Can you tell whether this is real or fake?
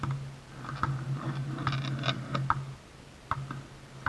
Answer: real